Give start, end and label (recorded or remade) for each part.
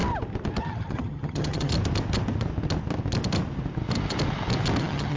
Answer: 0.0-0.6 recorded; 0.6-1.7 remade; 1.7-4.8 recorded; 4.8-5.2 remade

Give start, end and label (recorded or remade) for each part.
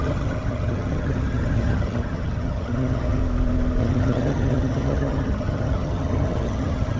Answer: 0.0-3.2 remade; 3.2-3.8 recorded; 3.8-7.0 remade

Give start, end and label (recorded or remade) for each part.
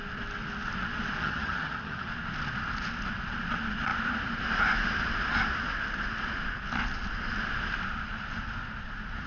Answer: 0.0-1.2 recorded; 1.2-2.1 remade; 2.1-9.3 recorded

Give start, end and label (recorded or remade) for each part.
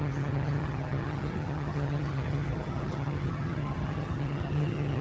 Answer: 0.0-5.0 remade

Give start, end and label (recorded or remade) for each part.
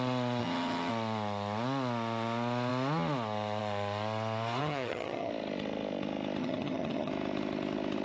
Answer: 0.0-0.4 recorded; 0.4-0.9 remade; 0.9-4.6 recorded; 4.6-5.3 remade; 5.3-6.4 recorded; 6.4-7.1 remade; 7.1-8.0 recorded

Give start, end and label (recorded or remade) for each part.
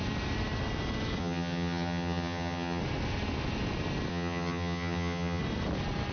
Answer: 0.0-1.2 recorded; 1.2-2.8 remade; 2.8-4.1 recorded; 4.1-5.4 remade; 5.4-6.1 recorded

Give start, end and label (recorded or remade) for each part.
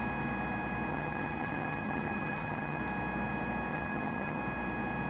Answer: 0.0-0.9 recorded; 0.9-2.8 remade; 2.8-3.7 recorded; 3.7-4.4 remade; 4.4-5.1 recorded